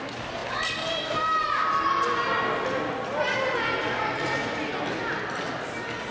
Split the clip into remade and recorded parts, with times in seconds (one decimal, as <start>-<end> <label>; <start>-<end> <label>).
0.0-6.1 recorded